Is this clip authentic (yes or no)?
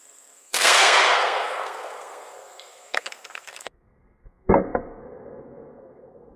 no